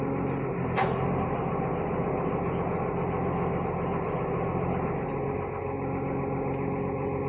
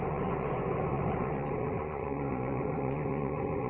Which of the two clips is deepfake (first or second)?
second